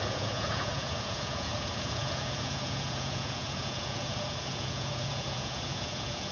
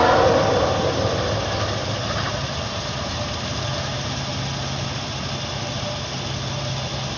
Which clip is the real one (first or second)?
second